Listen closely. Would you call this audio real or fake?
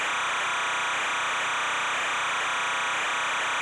real